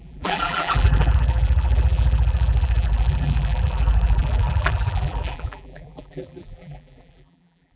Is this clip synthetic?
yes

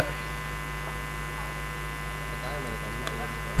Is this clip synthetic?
no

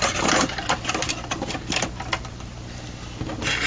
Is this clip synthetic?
yes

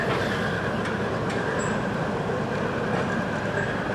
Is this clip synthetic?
no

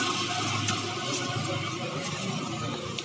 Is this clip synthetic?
no